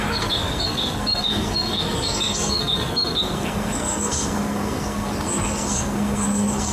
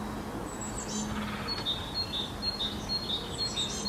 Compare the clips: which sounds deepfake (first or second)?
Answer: first